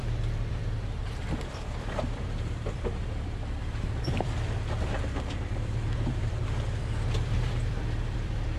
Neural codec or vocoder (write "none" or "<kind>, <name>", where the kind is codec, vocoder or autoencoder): vocoder, BigVGAN v2